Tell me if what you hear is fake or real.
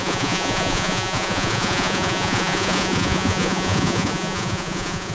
fake